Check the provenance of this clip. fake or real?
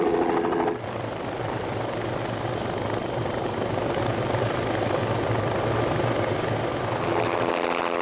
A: real